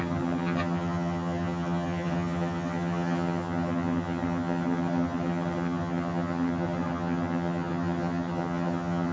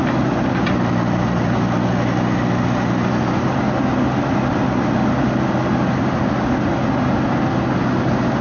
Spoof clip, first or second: first